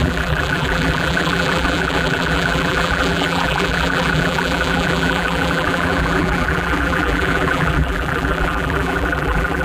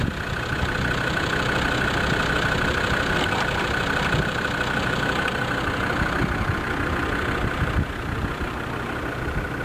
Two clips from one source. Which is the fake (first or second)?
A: first